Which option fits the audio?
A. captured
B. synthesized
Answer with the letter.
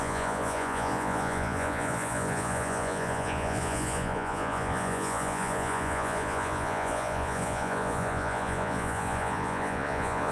B